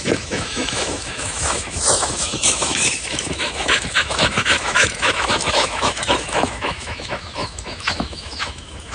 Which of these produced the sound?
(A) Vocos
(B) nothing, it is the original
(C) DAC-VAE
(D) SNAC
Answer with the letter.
C